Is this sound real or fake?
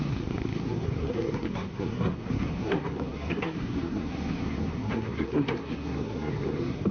fake